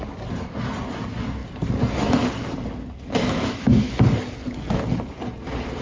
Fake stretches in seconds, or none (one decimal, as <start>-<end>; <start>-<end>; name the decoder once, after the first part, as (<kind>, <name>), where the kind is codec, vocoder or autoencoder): 3.2-3.9 (autoencoder, DAC-VAE)